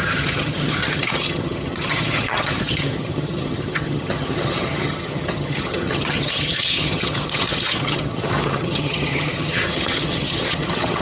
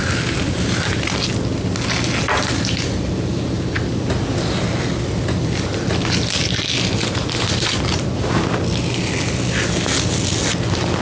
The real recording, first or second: second